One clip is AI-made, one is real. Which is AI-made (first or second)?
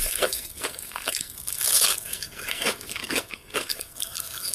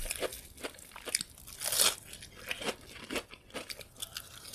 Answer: first